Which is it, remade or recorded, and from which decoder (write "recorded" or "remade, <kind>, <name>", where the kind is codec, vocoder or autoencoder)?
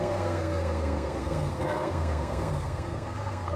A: remade, codec, SNAC